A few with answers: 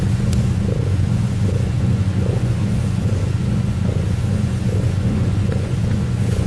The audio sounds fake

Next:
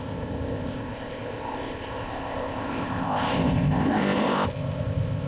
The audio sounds fake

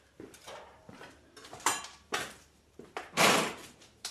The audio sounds fake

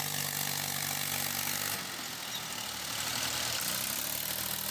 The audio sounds real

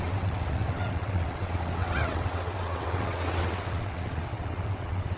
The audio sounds fake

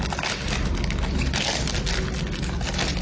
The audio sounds real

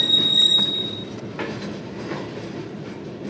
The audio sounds real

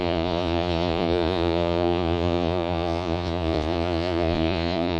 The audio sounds fake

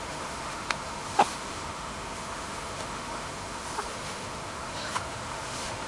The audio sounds fake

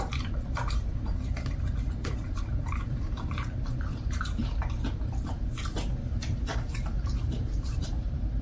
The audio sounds fake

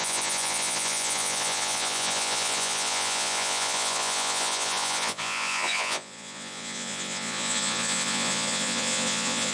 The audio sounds fake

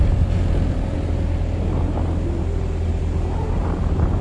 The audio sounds real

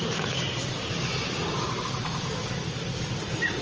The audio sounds real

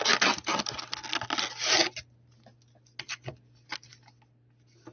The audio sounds real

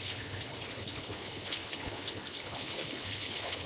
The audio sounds fake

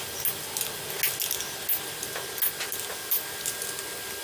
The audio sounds real